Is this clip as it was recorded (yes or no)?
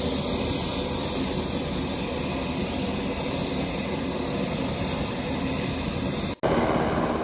yes